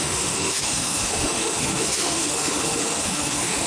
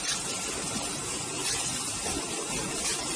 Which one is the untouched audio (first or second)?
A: second